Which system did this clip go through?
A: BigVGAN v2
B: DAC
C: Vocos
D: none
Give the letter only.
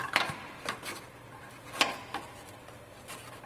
D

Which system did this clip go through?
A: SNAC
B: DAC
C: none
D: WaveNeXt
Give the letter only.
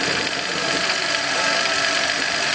C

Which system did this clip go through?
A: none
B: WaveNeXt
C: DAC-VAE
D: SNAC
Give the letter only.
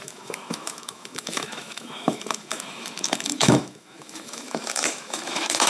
C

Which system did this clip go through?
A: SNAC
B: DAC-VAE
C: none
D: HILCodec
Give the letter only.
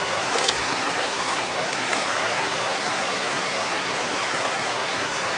A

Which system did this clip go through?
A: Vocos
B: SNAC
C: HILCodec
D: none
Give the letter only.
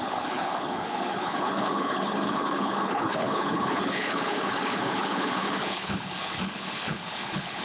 C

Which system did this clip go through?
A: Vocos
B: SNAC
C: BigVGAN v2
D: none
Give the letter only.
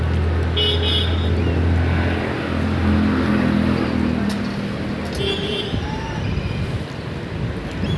D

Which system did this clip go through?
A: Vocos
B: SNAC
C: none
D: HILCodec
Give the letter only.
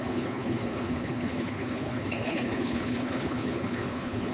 D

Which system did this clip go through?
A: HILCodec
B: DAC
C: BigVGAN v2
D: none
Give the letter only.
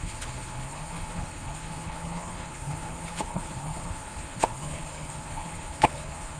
A